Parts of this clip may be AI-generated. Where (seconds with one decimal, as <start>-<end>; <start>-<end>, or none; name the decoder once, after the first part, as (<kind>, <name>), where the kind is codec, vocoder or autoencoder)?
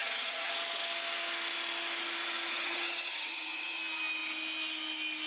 0.0-0.5 (vocoder, HiFi-GAN); 2.5-3.8